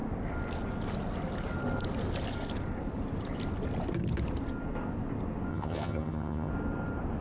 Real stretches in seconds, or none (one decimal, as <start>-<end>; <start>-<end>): 0.0-5.5; 6.5-7.2